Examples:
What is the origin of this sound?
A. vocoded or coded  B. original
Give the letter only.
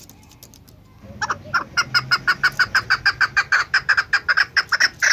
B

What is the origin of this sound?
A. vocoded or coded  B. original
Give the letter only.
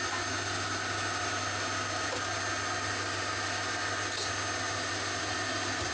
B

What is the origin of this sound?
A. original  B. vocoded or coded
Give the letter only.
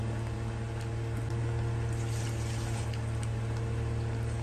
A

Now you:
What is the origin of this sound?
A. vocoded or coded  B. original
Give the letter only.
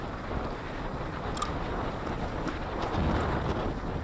B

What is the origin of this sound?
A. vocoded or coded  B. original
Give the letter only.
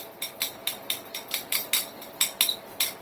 B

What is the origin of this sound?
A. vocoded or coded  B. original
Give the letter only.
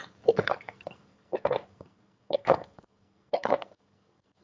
A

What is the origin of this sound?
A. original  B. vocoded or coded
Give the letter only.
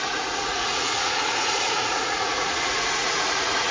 B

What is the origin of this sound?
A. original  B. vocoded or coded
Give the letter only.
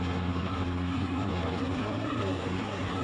B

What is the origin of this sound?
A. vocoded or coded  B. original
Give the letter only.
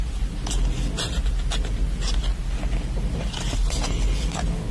B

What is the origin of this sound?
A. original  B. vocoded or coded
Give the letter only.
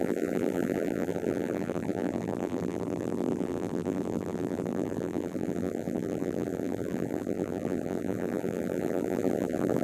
B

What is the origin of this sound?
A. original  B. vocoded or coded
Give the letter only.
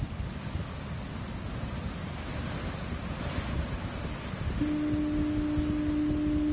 A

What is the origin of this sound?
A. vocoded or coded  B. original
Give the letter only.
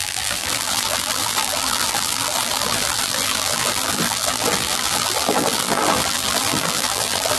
A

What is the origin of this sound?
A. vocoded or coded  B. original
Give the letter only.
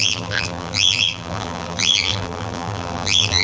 A